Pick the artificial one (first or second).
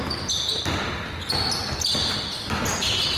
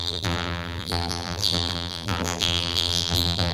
second